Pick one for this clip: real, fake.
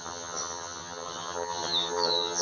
fake